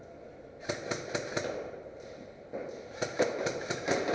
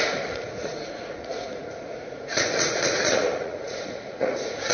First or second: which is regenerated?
second